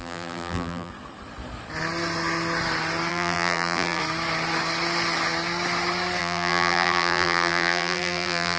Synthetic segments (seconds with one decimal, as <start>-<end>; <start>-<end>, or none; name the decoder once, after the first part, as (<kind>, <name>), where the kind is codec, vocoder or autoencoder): 0.0-0.9 (vocoder, BigVGAN v2); 3.1-4.0; 6.2-8.6